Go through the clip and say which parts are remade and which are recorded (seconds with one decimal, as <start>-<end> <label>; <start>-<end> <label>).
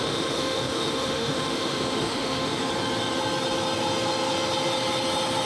0.0-2.6 remade; 2.6-5.5 recorded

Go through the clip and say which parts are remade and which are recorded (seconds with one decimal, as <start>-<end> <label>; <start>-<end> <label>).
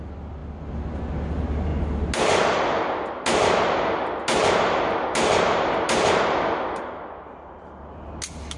0.0-8.6 recorded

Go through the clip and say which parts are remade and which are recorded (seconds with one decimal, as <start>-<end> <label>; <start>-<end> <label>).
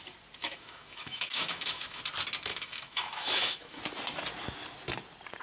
0.0-0.4 recorded; 0.4-2.0 remade; 2.0-2.5 recorded; 2.5-3.8 remade; 3.8-5.4 recorded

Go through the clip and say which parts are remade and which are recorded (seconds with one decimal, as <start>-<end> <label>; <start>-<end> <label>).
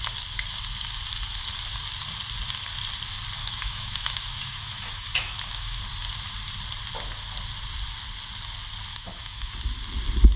0.0-3.4 recorded; 3.4-5.8 remade; 5.8-8.9 recorded; 8.9-9.5 remade; 9.5-10.4 recorded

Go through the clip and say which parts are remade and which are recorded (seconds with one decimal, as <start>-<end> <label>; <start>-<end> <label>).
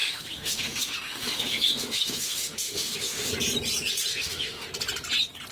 0.0-3.3 remade; 3.3-4.1 recorded; 4.1-4.7 remade; 4.7-5.5 recorded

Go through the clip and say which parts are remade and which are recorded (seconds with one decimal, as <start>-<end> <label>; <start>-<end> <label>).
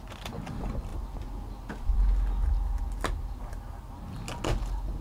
0.0-5.0 recorded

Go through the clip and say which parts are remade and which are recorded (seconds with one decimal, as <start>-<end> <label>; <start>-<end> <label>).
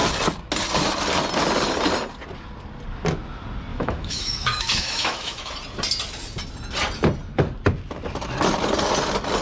0.0-3.7 recorded; 3.7-5.5 remade; 5.5-9.4 recorded